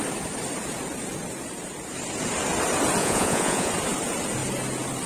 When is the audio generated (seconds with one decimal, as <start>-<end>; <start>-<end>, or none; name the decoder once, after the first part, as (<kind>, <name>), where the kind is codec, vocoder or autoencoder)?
3.0-3.7 (vocoder, Vocos)